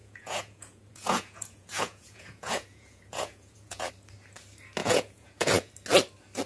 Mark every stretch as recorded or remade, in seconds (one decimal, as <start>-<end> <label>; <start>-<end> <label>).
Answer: 0.0-3.9 remade; 3.9-4.8 recorded; 4.8-5.7 remade; 5.7-6.5 recorded